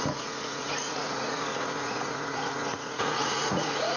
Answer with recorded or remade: remade